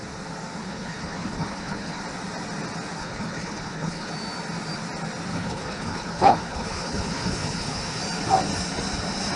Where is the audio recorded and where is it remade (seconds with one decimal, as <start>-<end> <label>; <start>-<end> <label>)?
0.0-0.6 recorded; 0.6-2.0 remade; 2.0-3.0 recorded; 3.0-4.1 remade; 4.1-5.3 recorded; 5.3-8.0 remade; 8.0-9.4 recorded